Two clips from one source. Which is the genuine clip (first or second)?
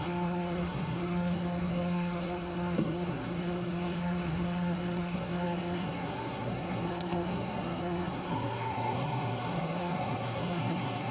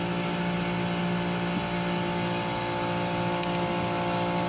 second